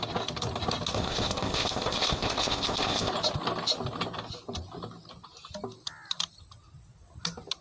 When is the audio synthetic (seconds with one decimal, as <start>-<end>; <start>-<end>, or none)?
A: 0.9-3.1

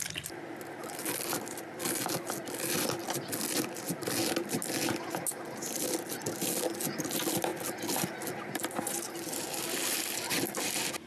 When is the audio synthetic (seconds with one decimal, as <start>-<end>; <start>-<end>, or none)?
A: none

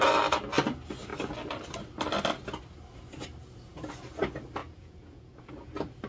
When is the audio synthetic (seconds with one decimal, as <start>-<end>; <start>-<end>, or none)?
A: 4.6-5.5

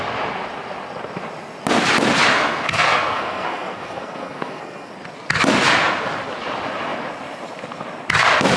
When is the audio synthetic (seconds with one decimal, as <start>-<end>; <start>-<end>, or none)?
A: 2.3-4.9

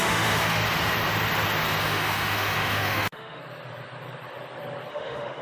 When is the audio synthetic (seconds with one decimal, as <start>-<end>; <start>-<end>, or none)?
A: 0.0-0.6; 1.8-3.4; 4.9-5.4

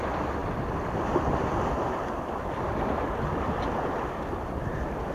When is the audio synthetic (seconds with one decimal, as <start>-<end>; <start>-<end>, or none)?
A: 0.4-3.2